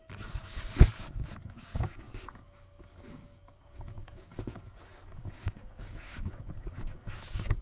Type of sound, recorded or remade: remade